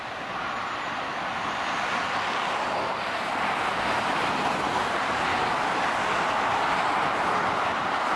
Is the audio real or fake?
real